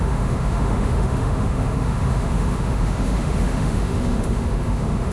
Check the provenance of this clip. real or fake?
fake